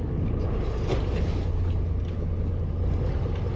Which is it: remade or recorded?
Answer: recorded